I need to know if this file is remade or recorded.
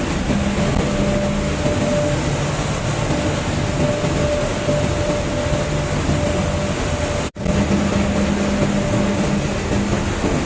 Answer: recorded